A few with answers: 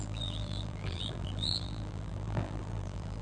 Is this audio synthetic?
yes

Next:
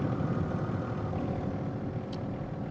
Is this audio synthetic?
no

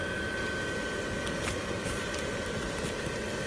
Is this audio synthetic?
no